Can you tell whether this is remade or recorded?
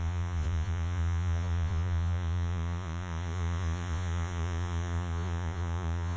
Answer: remade